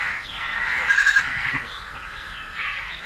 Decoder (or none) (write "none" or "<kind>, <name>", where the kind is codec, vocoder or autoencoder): codec, SNAC